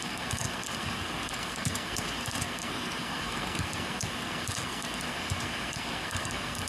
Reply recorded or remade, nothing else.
remade